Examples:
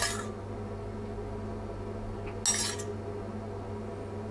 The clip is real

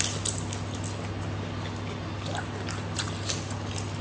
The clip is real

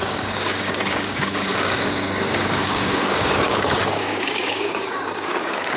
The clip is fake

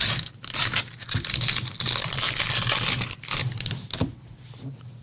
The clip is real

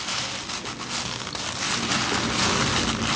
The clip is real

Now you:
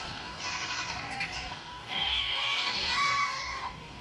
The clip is fake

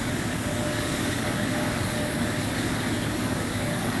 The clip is fake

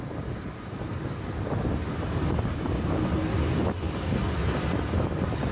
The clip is real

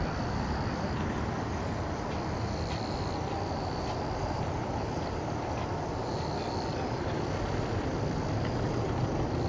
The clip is real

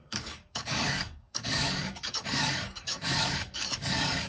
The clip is fake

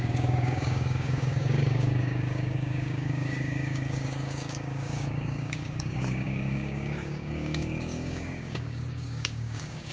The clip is fake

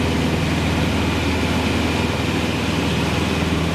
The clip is real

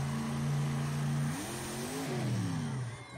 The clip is real